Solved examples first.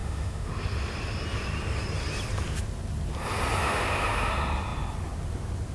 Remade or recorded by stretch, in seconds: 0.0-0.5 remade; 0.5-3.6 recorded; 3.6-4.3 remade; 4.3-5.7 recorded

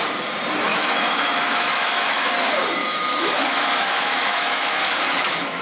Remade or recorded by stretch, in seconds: 0.0-0.7 recorded; 0.7-2.3 remade; 2.3-2.8 recorded; 2.8-5.6 remade

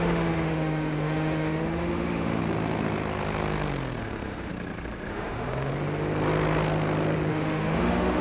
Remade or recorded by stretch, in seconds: 0.0-2.4 remade; 2.4-4.0 recorded; 4.0-4.5 remade; 4.5-5.1 recorded; 5.1-5.7 remade; 5.7-7.3 recorded; 7.3-8.2 remade

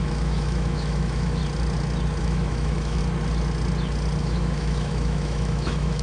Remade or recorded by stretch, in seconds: 0.0-1.4 remade; 1.4-2.2 recorded; 2.2-3.0 remade; 3.0-4.2 recorded; 4.2-6.0 remade

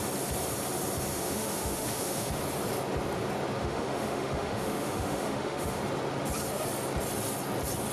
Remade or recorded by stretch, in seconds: 0.0-1.1 recorded; 1.1-2.3 remade; 2.3-3.6 recorded; 3.6-5.8 remade; 5.8-7.9 recorded

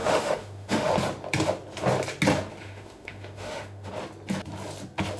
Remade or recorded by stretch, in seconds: 0.0-0.9 remade; 0.9-2.6 recorded; 2.6-3.9 remade; 3.9-5.2 recorded

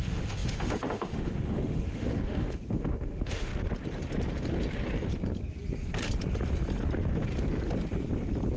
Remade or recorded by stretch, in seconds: 0.0-3.5 remade; 3.5-8.6 recorded